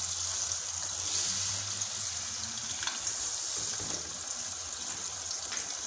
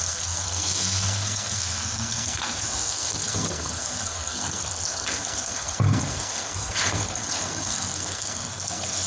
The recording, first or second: first